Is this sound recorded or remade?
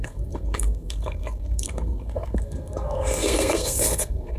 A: remade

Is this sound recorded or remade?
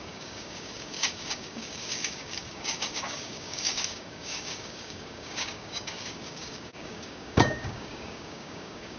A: remade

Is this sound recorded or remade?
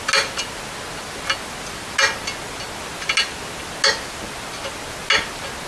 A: recorded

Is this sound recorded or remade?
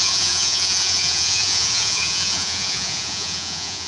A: remade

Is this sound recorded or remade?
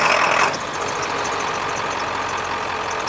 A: recorded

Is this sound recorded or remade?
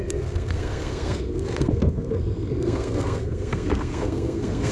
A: remade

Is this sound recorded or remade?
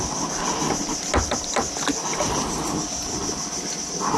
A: recorded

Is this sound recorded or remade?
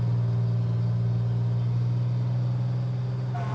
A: recorded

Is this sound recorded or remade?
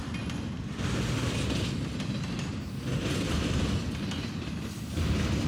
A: recorded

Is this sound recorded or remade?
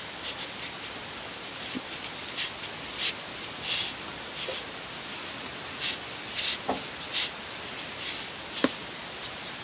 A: recorded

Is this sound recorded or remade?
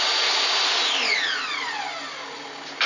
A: recorded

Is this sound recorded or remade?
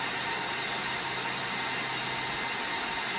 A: recorded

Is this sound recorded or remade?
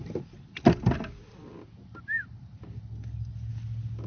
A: recorded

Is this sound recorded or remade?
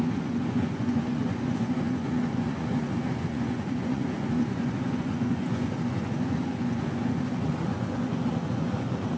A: remade